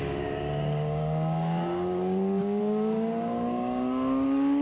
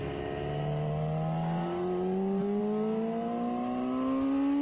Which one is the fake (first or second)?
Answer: first